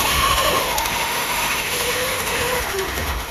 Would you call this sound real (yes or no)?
no